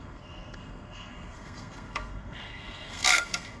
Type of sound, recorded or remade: remade